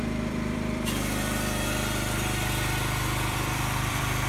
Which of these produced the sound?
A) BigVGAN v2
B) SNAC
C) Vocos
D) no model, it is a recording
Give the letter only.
A